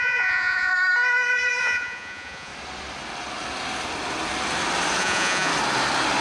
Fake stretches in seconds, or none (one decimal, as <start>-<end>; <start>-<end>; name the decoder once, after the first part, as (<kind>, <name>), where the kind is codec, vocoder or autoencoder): 0.0-0.7 (vocoder, Vocos); 1.6-2.5; 5.0-5.5